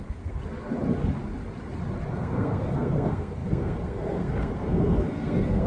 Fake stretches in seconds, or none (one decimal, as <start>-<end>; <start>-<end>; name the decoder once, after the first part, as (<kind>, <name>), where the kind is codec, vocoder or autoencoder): 0.0-0.4 (codec, SNAC); 2.1-5.7